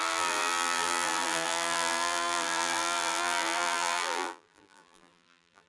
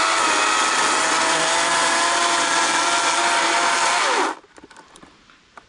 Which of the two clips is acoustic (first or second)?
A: second